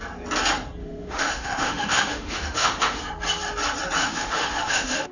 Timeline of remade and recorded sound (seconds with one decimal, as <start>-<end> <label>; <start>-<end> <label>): 0.0-0.8 recorded; 0.8-3.0 remade; 3.0-4.0 recorded; 4.0-5.1 remade